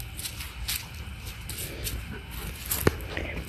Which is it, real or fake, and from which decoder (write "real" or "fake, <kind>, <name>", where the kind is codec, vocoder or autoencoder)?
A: real